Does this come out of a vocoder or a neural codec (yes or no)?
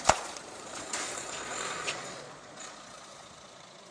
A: yes